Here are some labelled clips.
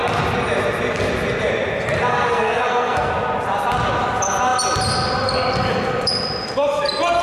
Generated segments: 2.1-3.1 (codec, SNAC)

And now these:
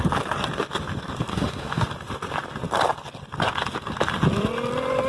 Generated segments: 1.3-1.9 (autoencoder, DAC-VAE)

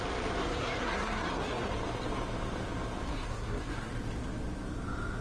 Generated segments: 0.4-1.7 (codec, SNAC); 3.1-3.9

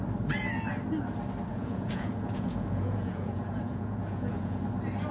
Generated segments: 1.5-4.6 (vocoder, Vocos)

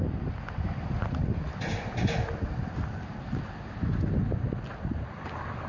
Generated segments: none

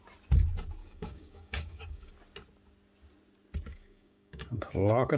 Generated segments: 0.8-2.1 (codec, DAC); 3.7-5.2

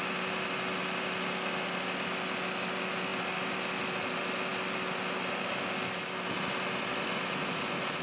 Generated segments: none